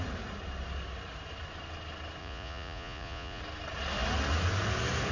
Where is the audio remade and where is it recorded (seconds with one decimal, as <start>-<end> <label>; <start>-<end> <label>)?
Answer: 0.0-2.2 recorded; 2.2-3.4 remade; 3.4-5.1 recorded